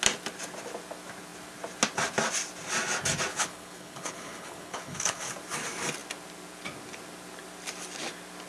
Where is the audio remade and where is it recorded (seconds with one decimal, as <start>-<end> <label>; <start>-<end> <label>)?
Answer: 0.0-3.3 recorded; 3.3-5.3 remade; 5.3-8.5 recorded